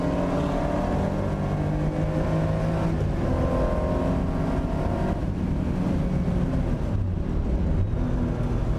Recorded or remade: recorded